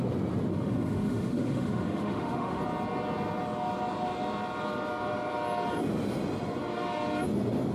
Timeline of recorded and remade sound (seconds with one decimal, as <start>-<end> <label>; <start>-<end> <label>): 0.0-0.5 recorded; 0.5-2.6 remade; 2.6-7.7 recorded